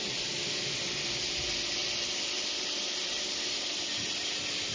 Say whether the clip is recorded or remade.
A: recorded